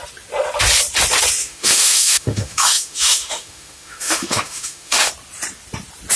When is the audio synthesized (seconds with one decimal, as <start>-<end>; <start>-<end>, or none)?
1.4-5.1